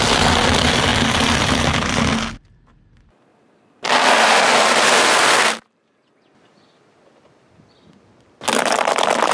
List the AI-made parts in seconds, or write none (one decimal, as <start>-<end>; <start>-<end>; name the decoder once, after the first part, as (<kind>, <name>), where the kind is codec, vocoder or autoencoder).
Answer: none